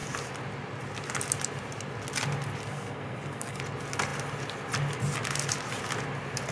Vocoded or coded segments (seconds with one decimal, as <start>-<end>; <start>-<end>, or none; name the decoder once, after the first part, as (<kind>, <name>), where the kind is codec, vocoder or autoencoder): 2.6-3.6 (codec, SNAC)